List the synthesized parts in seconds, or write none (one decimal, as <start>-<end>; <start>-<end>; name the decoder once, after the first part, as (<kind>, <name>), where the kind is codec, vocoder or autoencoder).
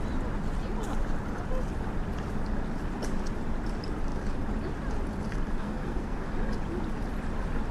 5.6-6.3 (codec, SNAC)